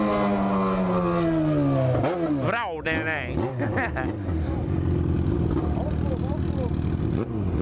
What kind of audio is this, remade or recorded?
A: recorded